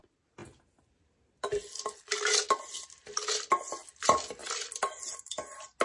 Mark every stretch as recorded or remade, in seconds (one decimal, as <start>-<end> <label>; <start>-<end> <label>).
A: 0.0-5.8 recorded